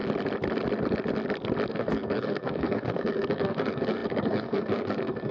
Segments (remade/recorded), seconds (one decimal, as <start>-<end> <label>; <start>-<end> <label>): 0.0-1.7 recorded; 1.7-5.3 remade